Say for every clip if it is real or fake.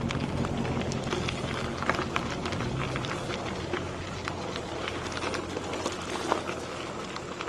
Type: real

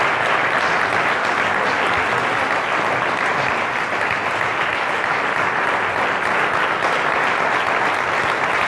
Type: real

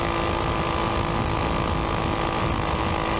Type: real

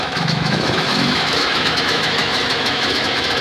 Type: fake